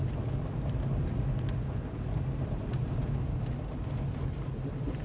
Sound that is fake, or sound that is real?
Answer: real